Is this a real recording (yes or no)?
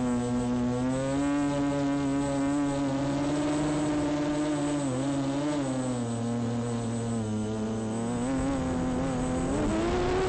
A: yes